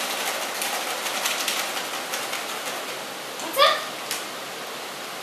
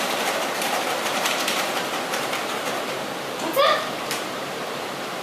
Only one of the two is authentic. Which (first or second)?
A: first